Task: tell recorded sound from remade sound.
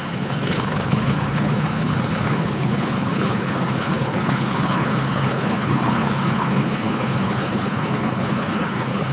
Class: remade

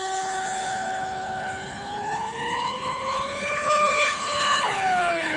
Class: remade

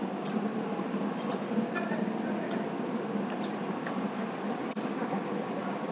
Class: recorded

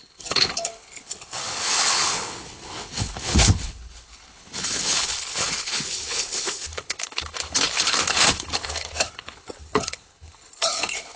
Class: remade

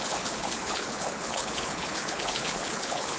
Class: remade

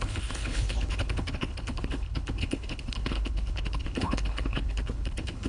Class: remade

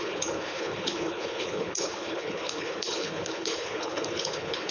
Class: remade